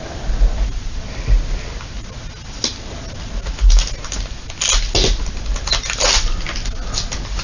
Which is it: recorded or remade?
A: recorded